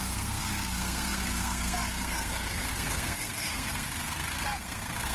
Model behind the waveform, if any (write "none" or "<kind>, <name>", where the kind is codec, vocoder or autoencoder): codec, SNAC